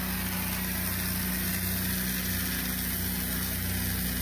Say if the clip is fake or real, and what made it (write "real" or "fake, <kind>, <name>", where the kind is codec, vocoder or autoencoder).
real